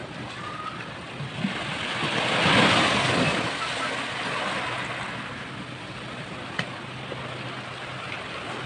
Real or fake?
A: real